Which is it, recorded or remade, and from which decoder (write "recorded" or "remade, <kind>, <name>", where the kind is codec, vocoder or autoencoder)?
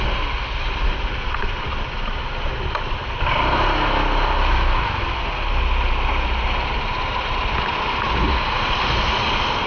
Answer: recorded